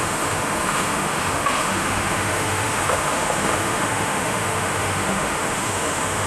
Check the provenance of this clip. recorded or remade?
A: remade